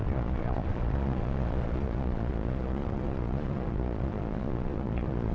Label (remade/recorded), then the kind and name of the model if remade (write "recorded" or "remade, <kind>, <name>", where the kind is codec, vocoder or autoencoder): remade, vocoder, Vocos